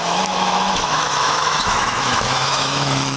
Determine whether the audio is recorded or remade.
remade